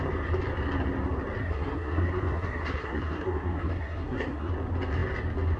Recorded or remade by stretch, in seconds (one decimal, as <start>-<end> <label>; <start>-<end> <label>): 0.0-1.4 recorded; 1.4-4.5 remade; 4.5-5.6 recorded